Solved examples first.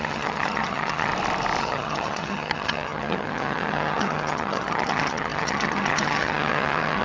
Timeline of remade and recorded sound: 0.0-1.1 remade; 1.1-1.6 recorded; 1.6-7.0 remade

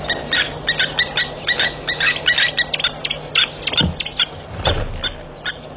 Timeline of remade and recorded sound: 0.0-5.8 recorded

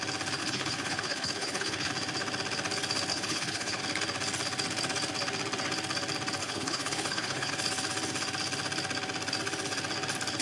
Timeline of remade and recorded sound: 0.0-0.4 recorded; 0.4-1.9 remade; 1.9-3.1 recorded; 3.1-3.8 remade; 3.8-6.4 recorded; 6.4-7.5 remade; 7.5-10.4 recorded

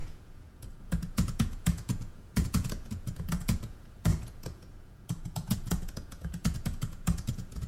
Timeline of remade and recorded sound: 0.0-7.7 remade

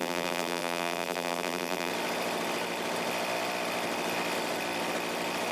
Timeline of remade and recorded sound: 0.0-1.9 remade; 1.9-5.5 recorded

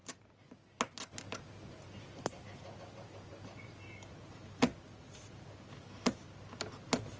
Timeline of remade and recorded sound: 0.0-7.2 recorded